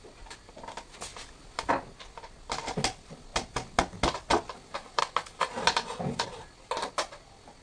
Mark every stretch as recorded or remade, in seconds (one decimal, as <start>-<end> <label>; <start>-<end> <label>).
0.0-7.6 recorded